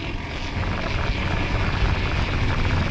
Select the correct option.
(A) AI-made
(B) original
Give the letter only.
B